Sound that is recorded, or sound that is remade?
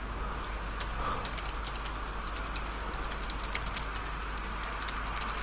recorded